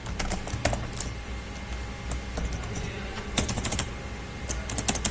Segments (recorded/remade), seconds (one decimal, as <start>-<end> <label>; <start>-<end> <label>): 0.0-2.7 recorded; 2.7-3.6 remade; 3.6-5.1 recorded